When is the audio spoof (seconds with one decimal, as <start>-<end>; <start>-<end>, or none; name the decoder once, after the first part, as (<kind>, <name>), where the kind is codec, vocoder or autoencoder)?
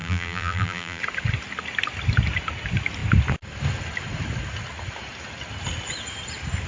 0.0-1.0 (vocoder, BigVGAN v2)